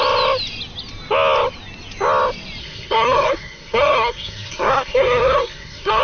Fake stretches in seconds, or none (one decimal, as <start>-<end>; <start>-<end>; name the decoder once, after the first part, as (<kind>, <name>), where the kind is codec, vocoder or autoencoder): 2.6-6.0 (codec, SNAC)